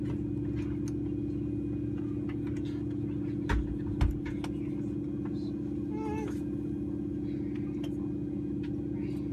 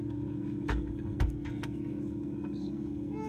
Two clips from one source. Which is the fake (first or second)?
second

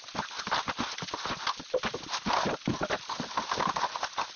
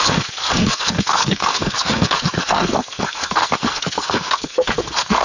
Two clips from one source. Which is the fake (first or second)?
second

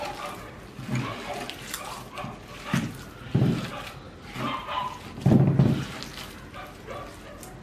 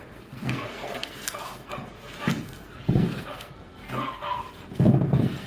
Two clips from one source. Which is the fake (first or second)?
second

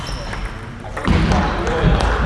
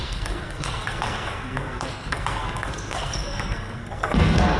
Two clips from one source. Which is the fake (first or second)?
second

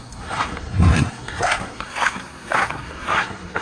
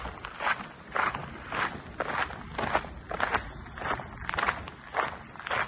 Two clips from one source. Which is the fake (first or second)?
first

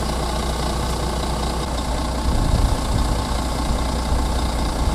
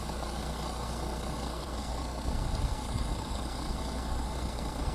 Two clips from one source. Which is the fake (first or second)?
second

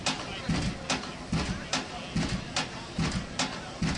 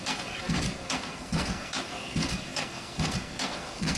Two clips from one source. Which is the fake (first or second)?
second